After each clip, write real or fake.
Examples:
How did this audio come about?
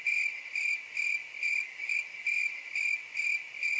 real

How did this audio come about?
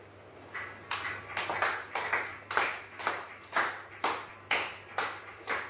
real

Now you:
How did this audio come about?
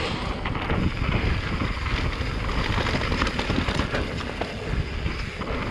real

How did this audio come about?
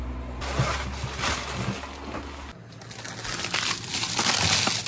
real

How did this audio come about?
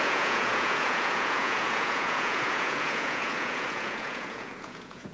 fake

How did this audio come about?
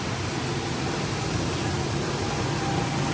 real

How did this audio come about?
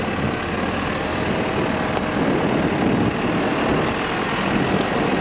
real